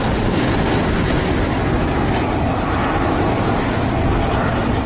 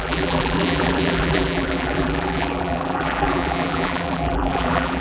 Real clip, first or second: first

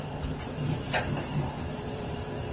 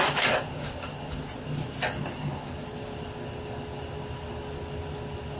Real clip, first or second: second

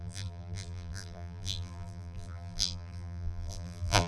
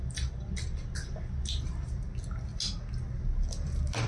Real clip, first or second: second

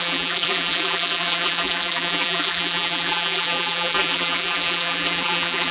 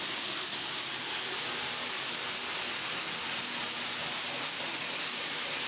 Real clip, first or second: second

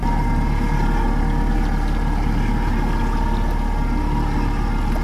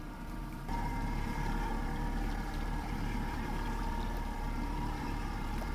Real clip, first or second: first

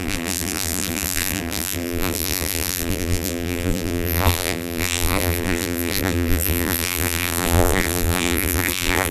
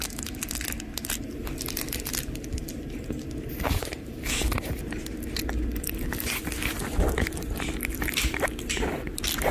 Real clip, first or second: second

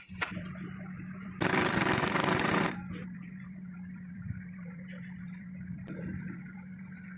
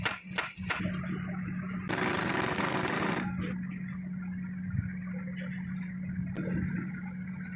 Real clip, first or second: second